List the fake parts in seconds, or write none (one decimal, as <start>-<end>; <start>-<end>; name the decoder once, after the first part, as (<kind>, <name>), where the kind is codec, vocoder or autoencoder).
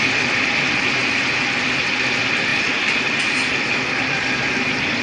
none